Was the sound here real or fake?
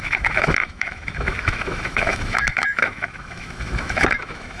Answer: fake